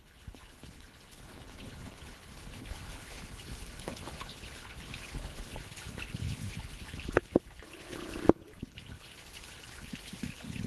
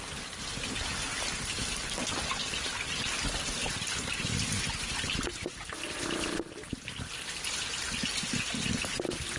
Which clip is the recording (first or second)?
second